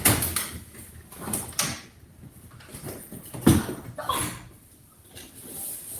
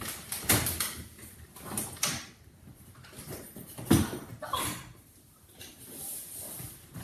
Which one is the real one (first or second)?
first